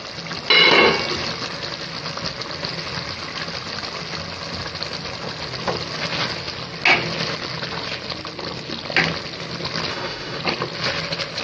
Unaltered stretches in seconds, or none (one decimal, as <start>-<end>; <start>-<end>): 0.0-9.9; 10.4-11.4